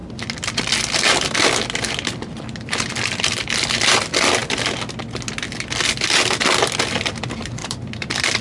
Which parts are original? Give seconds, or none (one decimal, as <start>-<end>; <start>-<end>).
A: 0.6-7.6

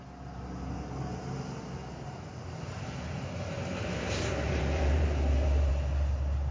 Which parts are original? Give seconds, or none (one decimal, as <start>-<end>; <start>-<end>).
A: 0.0-1.8; 5.7-6.5